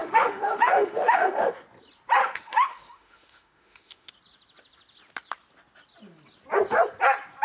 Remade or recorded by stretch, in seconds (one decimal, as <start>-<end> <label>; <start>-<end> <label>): 0.0-1.6 remade; 1.6-2.2 recorded; 2.2-4.1 remade; 4.1-7.4 recorded